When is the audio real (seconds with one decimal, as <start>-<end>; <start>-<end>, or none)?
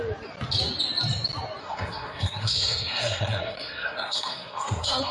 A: 0.0-1.6